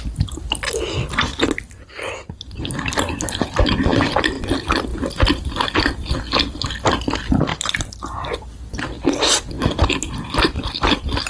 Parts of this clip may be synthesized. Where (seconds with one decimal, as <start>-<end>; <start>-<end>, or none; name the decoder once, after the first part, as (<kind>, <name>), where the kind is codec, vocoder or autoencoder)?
none